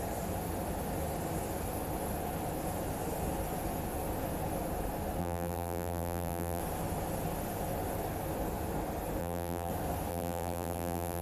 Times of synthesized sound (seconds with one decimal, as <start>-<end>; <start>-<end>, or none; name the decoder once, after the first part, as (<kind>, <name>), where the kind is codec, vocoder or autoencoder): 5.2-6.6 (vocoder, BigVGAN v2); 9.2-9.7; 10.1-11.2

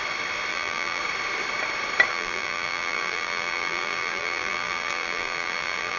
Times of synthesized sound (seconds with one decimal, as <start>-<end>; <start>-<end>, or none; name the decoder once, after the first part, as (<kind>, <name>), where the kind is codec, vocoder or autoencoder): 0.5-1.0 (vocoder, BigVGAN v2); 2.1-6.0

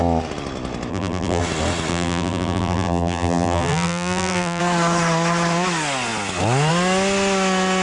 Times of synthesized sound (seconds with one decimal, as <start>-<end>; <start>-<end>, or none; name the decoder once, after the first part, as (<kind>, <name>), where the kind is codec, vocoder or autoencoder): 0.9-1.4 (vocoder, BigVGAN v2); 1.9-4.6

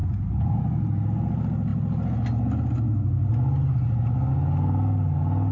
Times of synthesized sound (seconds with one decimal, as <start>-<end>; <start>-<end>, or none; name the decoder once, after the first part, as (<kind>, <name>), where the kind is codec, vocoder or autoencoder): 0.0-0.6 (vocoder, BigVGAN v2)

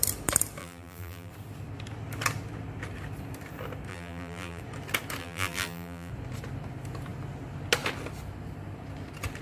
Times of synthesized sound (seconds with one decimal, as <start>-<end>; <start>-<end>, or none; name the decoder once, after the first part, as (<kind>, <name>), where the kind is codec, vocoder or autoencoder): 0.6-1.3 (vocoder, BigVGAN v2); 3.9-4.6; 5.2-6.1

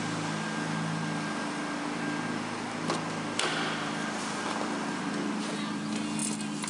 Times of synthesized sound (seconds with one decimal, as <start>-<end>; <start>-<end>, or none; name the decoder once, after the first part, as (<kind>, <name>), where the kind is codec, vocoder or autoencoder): none

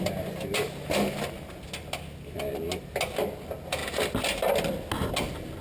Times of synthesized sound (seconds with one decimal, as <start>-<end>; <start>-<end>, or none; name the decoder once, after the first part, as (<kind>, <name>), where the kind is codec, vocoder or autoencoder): none